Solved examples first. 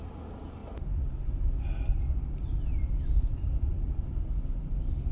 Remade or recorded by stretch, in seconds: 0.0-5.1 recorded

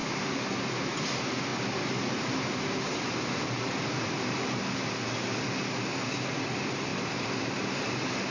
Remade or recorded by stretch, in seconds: 0.0-8.3 recorded

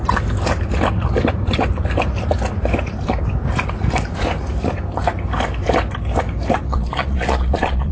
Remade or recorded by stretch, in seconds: 0.0-6.7 recorded; 6.7-7.9 remade

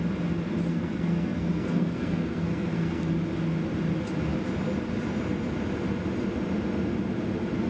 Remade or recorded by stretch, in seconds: 0.0-0.7 recorded; 0.7-3.1 remade; 3.1-7.7 recorded

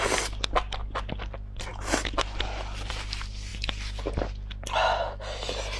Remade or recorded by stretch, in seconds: 0.0-5.8 recorded